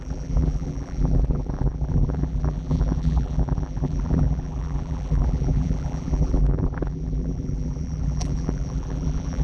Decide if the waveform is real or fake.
fake